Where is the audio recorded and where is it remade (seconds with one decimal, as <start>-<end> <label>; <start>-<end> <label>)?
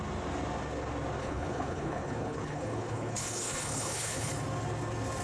0.0-1.2 recorded; 1.2-4.3 remade; 4.3-5.2 recorded